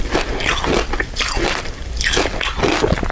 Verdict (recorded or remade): recorded